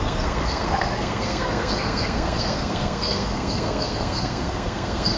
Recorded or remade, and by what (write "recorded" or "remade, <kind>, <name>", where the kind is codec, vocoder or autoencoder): remade, codec, SNAC